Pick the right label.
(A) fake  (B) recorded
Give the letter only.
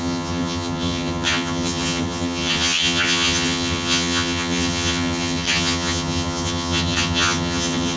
A